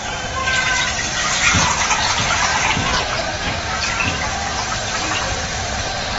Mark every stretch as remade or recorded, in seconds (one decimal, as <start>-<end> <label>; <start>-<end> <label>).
0.0-0.4 remade; 0.4-2.1 recorded; 2.1-2.5 remade; 2.5-3.0 recorded; 3.0-4.0 remade; 4.0-5.0 recorded; 5.0-6.2 remade